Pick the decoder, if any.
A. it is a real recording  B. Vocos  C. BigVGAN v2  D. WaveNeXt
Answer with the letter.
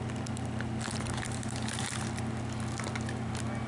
A